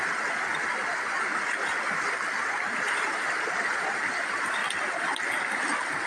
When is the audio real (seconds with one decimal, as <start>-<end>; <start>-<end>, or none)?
0.0-6.1